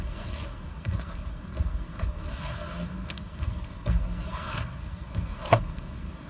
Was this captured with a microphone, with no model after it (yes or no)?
no